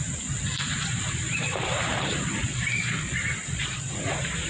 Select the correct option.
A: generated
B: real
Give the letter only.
A